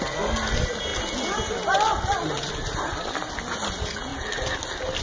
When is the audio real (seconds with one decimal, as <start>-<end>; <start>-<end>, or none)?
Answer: 0.0-5.0